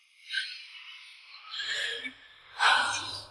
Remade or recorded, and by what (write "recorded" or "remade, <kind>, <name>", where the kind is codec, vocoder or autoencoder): recorded